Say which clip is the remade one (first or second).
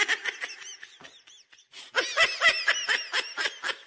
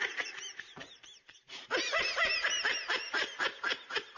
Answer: second